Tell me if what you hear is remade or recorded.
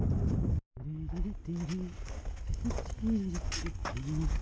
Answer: recorded